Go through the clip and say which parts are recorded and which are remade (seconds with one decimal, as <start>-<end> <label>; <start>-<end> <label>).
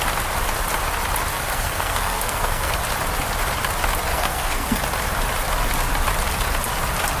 0.0-1.3 recorded; 1.3-2.8 remade; 2.8-4.1 recorded; 4.1-4.8 remade; 4.8-7.2 recorded